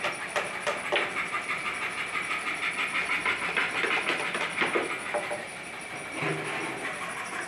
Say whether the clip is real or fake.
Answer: real